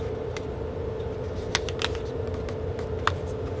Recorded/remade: recorded